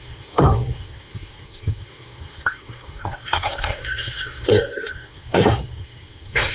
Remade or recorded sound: remade